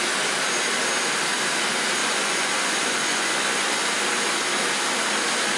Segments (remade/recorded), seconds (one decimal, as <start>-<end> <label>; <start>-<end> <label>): 0.0-2.0 recorded; 2.0-3.9 remade; 3.9-5.6 recorded